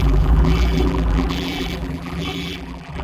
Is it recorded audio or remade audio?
remade